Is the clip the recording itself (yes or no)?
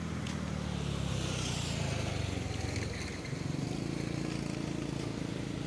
yes